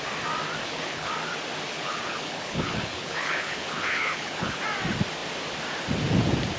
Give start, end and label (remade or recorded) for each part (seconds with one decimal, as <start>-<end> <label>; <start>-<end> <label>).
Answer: 0.0-0.6 recorded; 0.6-1.1 remade; 1.1-1.7 recorded; 1.7-4.6 remade; 4.6-6.6 recorded